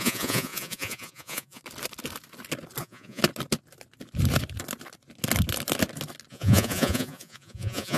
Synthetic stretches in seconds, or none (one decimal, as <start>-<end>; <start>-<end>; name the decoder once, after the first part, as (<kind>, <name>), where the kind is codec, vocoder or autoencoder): 0.0-1.6 (vocoder, Vocos); 2.8-3.2; 6.3-8.0